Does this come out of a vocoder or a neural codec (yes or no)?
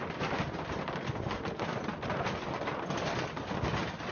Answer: no